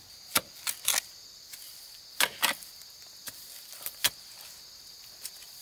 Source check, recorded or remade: recorded